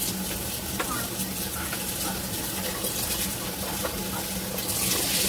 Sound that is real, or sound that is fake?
real